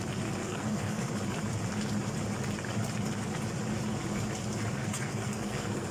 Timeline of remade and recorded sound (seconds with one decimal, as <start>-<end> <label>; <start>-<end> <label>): 0.0-0.4 recorded; 0.4-1.1 remade; 1.1-4.8 recorded; 4.8-5.9 remade

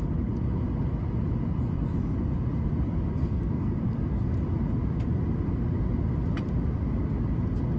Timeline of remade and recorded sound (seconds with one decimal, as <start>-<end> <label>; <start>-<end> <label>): 0.0-3.2 recorded; 3.2-4.0 remade; 4.0-7.8 recorded

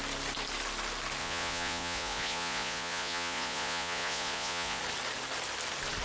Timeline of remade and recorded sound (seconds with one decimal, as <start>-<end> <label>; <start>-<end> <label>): 0.0-1.2 recorded; 1.2-4.8 remade; 4.8-6.0 recorded

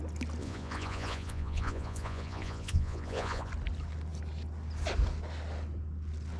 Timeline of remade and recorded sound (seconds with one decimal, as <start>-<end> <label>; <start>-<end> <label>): 0.0-0.4 recorded; 0.4-3.5 remade; 3.5-6.4 recorded

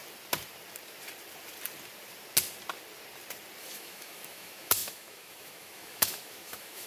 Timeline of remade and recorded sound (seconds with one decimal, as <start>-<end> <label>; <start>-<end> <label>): 0.0-3.6 recorded; 3.6-6.9 remade

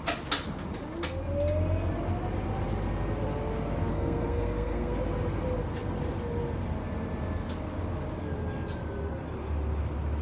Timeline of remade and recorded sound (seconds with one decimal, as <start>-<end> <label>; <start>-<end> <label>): 0.0-3.9 recorded; 3.9-4.9 remade; 4.9-10.2 recorded